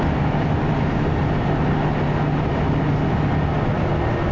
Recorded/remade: recorded